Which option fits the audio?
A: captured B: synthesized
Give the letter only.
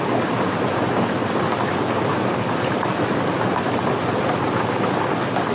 A